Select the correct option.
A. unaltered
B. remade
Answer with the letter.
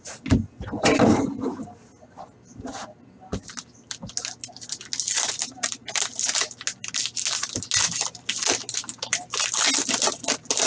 A